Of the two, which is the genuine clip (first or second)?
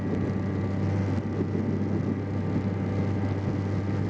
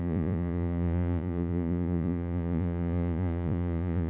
first